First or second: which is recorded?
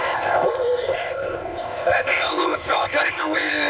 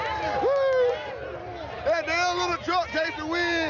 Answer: second